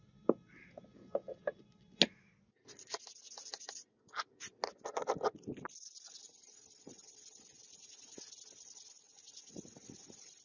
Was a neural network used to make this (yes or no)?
no